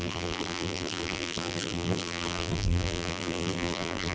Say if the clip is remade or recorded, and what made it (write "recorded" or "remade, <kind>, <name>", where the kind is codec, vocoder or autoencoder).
remade, vocoder, BigVGAN v2